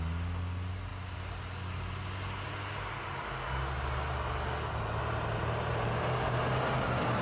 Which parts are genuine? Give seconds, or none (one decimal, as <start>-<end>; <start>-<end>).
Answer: 0.0-7.2